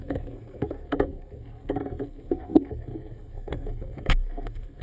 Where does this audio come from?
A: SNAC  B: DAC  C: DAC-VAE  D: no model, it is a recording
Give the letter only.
A